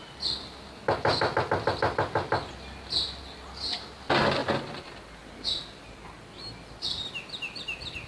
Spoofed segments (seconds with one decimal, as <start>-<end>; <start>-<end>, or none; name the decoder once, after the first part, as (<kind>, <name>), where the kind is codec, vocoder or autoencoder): none